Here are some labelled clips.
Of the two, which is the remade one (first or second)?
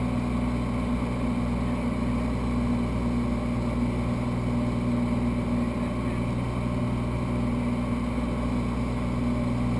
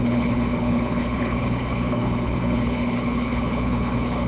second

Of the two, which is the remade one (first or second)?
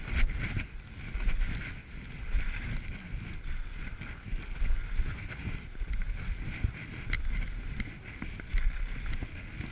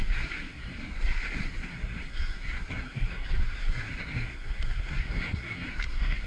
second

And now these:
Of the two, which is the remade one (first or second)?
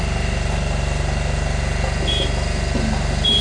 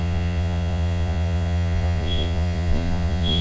second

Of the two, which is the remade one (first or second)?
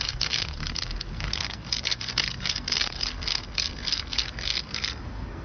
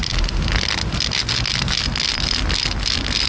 first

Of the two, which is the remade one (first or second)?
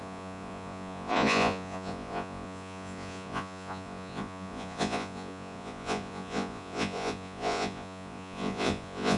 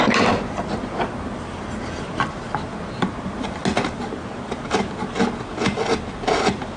first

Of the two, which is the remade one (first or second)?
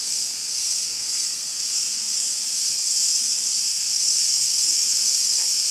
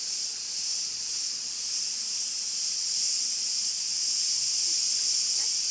first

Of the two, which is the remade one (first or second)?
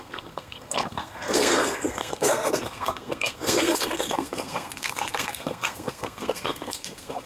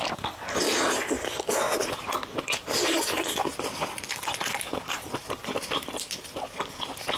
first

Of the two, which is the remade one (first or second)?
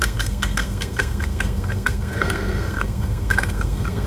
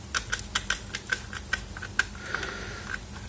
first